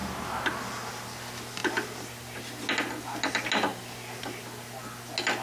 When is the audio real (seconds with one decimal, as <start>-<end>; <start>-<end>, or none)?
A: 0.0-5.4